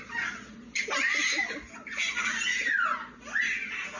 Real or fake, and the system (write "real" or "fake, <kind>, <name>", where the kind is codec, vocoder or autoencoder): real